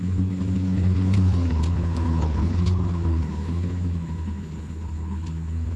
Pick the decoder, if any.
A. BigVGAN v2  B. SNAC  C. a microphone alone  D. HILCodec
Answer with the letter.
D